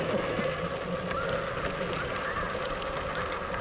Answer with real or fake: real